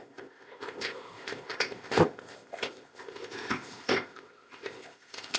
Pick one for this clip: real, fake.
fake